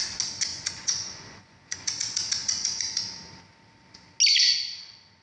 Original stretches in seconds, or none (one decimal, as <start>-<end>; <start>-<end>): 0.0-0.5; 1.9-2.4; 3.0-5.2

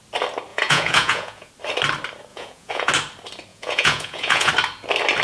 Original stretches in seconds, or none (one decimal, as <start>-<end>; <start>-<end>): 0.0-0.5; 1.5-2.3; 2.9-3.5; 4.5-5.2

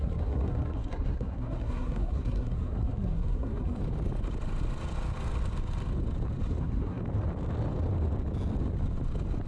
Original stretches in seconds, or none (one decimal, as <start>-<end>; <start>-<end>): 3.8-6.6; 7.0-9.5

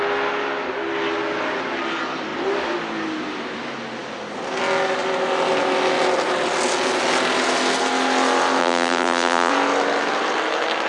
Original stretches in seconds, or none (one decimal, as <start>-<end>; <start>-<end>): 0.0-8.6; 9.5-10.9